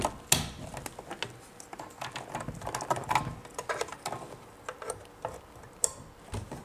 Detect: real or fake real